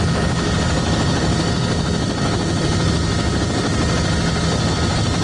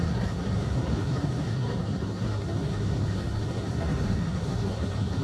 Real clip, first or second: first